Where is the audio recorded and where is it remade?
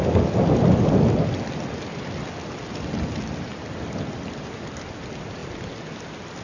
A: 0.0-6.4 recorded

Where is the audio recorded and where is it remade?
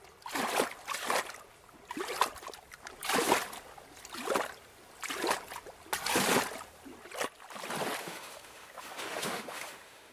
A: 0.0-8.0 recorded; 8.0-10.1 remade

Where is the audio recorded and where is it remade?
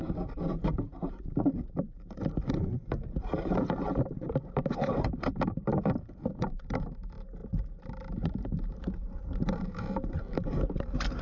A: 0.0-11.2 remade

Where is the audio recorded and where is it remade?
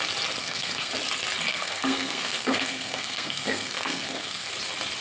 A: 0.0-0.4 recorded; 0.4-0.9 remade; 0.9-1.5 recorded; 1.5-4.5 remade; 4.5-5.0 recorded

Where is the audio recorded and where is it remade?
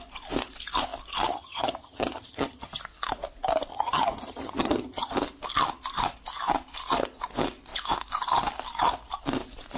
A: 0.0-1.3 recorded; 1.3-2.8 remade; 2.8-3.7 recorded; 3.7-5.1 remade; 5.1-9.8 recorded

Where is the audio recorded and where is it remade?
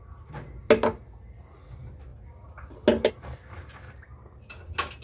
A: 0.0-5.0 recorded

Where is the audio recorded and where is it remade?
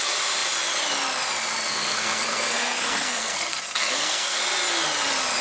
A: 0.0-1.7 recorded; 1.7-4.4 remade; 4.4-5.4 recorded